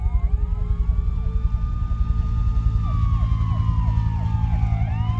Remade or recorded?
recorded